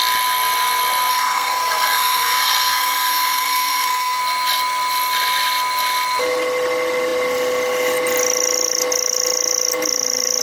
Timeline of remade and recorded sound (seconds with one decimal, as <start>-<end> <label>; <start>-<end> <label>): 0.0-1.1 recorded; 1.1-4.2 remade; 4.2-10.4 recorded